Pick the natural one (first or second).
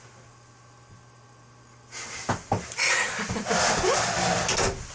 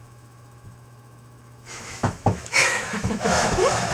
first